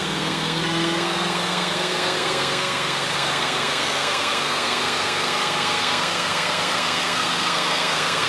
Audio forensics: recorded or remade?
remade